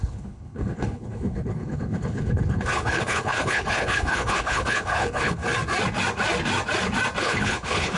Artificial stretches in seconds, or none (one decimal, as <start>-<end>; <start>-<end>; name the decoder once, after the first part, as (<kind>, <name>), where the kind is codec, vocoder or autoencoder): 0.0-5.4 (codec, HILCodec); 7.2-8.0